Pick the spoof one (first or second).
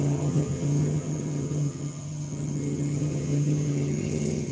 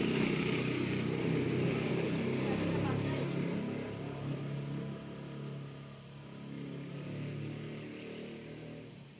first